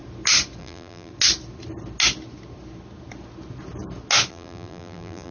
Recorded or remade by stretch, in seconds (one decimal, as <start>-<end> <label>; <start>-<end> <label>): 0.0-0.6 recorded; 0.6-1.1 remade; 1.1-4.3 recorded; 4.3-5.3 remade

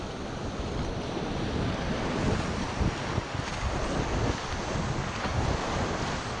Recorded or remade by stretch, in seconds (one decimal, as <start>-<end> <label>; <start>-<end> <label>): 0.0-6.4 recorded

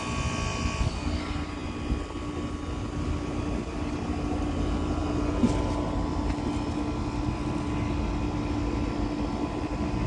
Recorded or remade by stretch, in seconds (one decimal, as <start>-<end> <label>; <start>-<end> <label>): 0.0-10.1 recorded

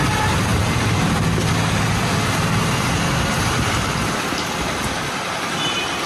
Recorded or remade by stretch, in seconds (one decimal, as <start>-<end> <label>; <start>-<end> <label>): 0.0-6.1 recorded

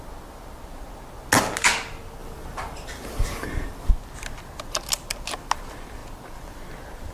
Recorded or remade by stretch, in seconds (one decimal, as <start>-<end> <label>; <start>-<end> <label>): 0.0-2.2 recorded; 2.2-3.9 remade; 3.9-7.1 recorded

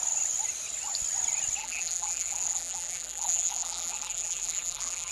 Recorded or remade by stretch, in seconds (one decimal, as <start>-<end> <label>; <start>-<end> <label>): 0.0-1.6 recorded; 1.6-5.1 remade

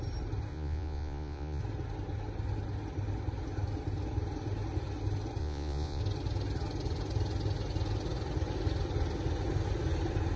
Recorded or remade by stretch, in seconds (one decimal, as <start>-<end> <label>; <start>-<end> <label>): 0.0-0.5 recorded; 0.5-1.6 remade; 1.6-5.4 recorded; 5.4-6.0 remade; 6.0-10.4 recorded